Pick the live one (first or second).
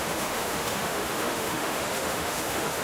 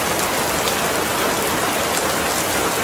second